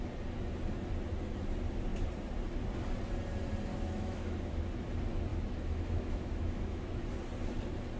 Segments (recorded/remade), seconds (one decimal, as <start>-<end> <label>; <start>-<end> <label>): 0.0-3.7 recorded; 3.7-4.6 remade; 4.6-5.3 recorded; 5.3-6.9 remade; 6.9-8.0 recorded